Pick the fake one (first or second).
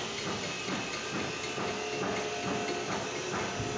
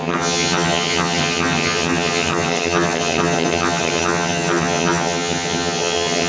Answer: second